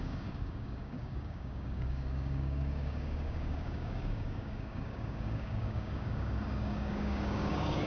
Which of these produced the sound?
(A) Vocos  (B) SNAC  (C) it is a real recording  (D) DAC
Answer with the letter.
D